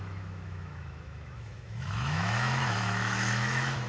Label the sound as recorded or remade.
remade